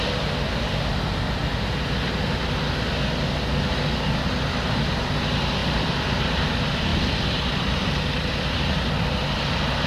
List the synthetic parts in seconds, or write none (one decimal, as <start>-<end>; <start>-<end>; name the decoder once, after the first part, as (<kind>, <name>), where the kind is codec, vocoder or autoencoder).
5.6-6.4 (vocoder, BigVGAN v2); 6.9-8.7